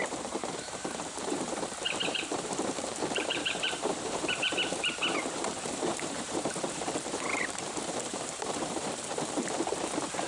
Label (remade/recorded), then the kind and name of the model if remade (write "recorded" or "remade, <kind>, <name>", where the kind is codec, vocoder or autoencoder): remade, vocoder, BigVGAN v2